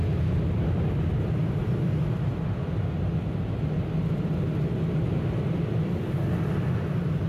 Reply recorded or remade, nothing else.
recorded